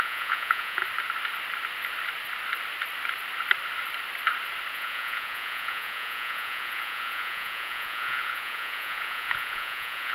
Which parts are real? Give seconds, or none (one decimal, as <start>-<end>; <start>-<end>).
0.8-4.7